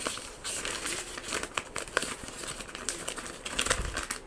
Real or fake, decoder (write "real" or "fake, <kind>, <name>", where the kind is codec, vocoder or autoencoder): real